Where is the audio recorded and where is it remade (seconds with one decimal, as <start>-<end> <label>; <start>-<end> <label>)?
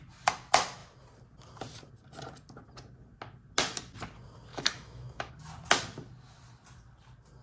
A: 0.0-4.5 recorded; 4.5-5.3 remade; 5.3-7.4 recorded